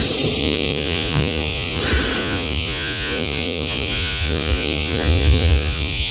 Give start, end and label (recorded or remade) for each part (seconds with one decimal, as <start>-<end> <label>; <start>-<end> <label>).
0.0-0.4 recorded; 0.4-1.8 remade; 1.8-2.2 recorded; 2.2-6.1 remade